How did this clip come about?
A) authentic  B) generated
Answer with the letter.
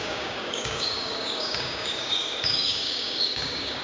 B